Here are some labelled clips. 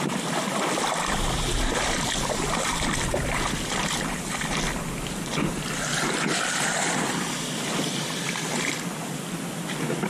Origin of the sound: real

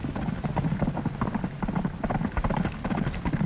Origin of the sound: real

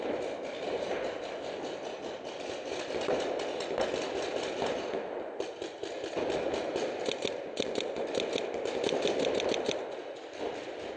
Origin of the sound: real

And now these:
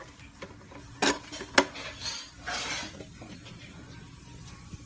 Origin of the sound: real